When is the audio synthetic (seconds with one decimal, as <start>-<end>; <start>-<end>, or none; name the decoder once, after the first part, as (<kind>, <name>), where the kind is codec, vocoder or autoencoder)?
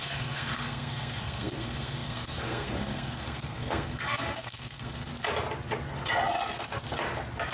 0.0-5.1 (codec, SNAC)